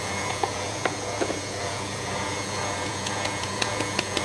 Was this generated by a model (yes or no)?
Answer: yes